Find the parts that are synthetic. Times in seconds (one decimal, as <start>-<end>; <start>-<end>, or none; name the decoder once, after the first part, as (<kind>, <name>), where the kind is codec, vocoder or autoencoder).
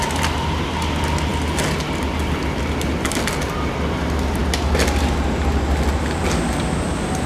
none